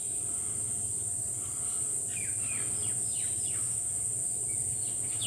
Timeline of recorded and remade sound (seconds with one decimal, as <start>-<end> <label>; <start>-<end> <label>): 0.0-5.3 recorded